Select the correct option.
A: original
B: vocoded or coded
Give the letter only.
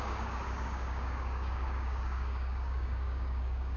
B